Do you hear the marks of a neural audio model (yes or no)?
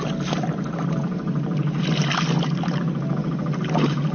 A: no